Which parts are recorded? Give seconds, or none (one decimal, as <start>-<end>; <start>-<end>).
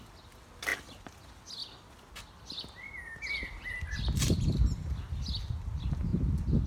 0.0-4.2; 4.8-6.7